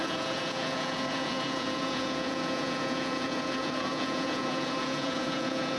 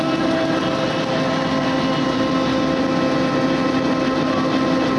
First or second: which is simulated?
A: first